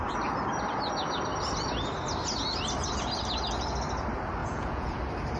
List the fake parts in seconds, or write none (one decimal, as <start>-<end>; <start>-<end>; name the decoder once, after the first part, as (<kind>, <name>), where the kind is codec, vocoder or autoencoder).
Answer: 4.4-5.0 (vocoder, Vocos)